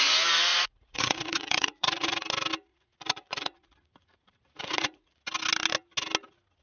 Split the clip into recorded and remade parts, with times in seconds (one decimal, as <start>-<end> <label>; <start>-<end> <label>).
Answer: 0.0-0.5 recorded; 0.5-2.2 remade; 2.2-2.7 recorded; 2.7-5.2 remade; 5.2-6.6 recorded